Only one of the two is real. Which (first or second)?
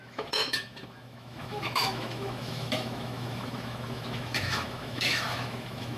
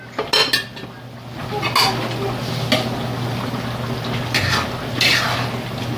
second